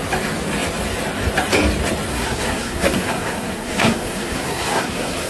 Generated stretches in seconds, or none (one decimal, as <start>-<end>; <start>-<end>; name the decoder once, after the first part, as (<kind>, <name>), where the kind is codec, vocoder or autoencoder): 2.1-5.3 (codec, SNAC)